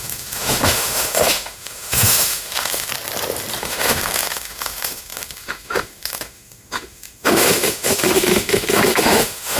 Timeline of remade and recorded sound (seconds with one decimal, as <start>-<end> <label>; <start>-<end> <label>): 0.0-2.9 remade; 2.9-3.6 recorded; 3.6-9.6 remade